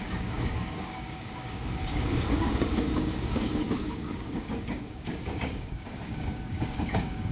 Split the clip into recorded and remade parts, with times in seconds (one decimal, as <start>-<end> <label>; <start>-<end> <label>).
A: 0.0-7.3 remade